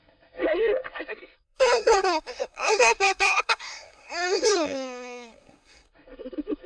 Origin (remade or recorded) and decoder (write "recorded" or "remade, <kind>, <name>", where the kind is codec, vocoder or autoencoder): remade, codec, SNAC